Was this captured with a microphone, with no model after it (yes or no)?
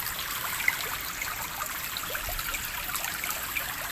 yes